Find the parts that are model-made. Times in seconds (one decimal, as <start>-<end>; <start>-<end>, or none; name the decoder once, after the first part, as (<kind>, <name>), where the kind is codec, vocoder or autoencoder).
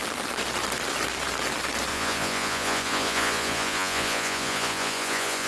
1.9-5.5 (vocoder, Vocos)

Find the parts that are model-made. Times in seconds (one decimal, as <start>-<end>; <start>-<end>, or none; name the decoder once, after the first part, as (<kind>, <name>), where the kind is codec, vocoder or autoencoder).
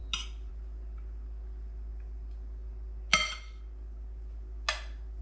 none